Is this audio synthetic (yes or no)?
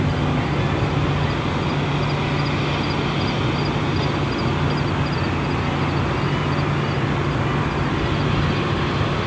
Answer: no